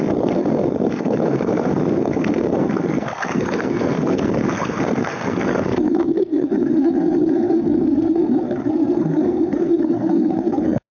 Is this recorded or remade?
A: remade